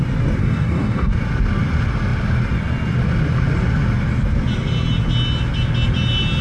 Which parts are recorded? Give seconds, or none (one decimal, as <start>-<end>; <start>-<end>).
0.0-0.4; 1.1-6.4